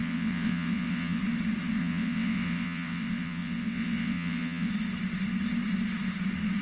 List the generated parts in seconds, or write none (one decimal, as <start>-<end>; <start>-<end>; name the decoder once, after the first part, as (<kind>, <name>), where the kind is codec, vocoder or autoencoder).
0.0-1.2 (vocoder, WaveNeXt); 1.8-4.7

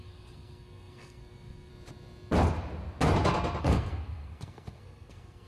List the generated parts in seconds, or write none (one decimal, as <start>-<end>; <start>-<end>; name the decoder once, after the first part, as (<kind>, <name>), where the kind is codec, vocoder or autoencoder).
0.0-1.7 (codec, SNAC); 3.6-5.5

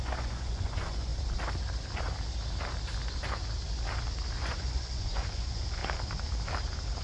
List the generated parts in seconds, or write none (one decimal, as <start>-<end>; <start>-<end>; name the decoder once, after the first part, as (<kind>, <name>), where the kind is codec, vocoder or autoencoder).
0.0-1.1 (vocoder, Vocos); 4.4-5.8

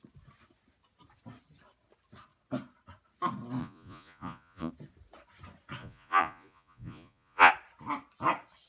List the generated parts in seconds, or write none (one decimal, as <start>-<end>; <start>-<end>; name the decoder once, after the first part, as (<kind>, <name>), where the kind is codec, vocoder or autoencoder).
3.6-4.7 (vocoder, Vocos); 5.8-7.5

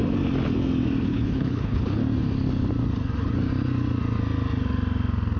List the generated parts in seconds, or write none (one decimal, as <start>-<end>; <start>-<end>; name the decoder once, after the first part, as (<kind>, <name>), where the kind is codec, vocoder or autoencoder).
1.0-2.0 (codec, HILCodec)